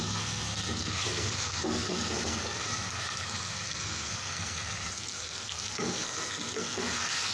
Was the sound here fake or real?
fake